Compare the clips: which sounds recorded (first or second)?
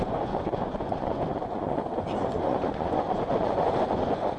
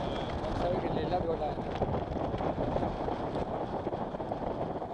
second